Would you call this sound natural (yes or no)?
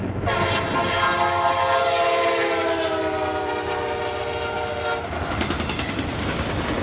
yes